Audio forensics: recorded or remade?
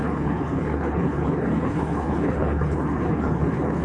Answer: remade